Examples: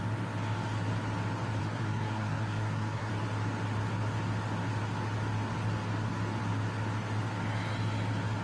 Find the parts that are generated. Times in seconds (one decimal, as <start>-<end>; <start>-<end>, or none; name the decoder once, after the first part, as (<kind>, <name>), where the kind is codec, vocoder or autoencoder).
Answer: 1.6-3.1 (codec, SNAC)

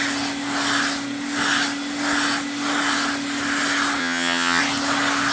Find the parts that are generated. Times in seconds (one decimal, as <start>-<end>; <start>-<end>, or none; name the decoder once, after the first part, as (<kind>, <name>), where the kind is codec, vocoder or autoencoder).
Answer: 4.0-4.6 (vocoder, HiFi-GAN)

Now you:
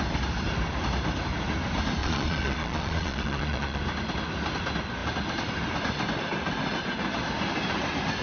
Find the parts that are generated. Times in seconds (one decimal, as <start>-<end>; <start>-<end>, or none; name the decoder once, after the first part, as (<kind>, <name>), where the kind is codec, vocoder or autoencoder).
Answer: 2.0-3.8 (vocoder, Vocos)

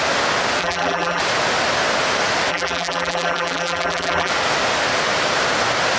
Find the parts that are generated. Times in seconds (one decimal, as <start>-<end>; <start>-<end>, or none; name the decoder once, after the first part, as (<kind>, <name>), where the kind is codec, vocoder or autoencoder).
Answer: 0.6-1.2 (vocoder, BigVGAN v2); 2.5-4.3